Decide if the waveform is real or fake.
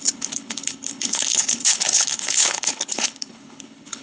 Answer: fake